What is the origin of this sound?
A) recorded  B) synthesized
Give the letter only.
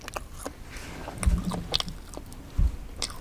A